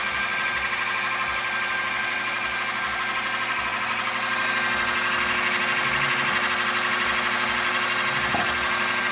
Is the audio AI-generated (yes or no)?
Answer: no